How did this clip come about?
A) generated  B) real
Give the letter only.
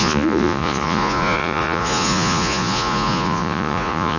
A